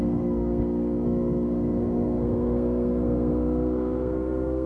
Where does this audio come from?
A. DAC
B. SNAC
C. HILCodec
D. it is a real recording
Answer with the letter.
B